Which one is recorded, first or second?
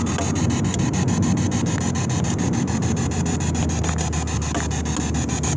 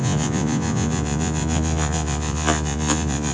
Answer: first